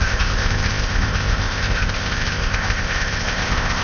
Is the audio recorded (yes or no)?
no